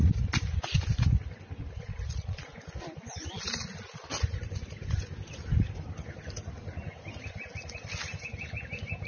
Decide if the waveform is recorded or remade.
recorded